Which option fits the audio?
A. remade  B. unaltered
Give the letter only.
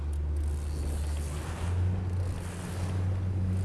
B